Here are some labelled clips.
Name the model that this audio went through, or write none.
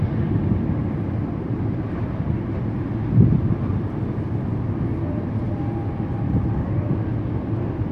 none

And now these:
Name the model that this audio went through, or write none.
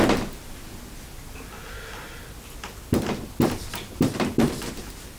none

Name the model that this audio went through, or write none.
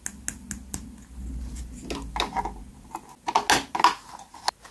none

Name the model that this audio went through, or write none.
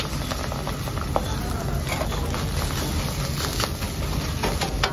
none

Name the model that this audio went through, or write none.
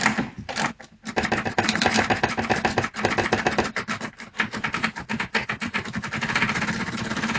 vocoder, BigVGAN v2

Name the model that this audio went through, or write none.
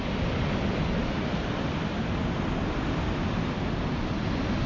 none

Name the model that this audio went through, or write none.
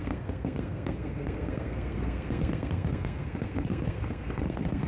codec, SNAC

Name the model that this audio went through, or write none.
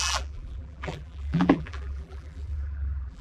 vocoder, BigVGAN v2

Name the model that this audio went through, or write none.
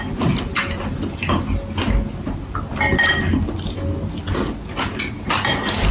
none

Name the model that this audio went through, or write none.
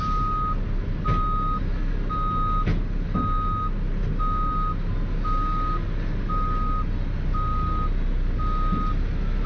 none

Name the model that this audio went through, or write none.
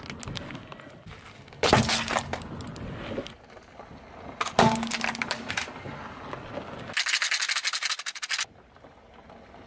none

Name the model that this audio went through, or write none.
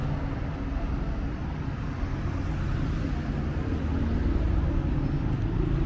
none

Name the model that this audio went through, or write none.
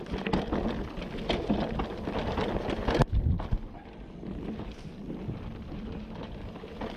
none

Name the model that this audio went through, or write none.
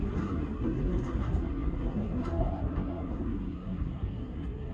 codec, SNAC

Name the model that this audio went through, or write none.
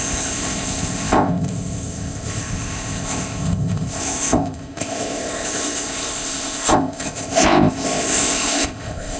codec, ZipCodec